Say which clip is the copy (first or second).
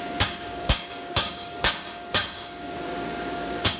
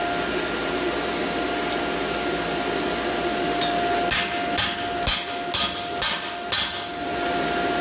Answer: first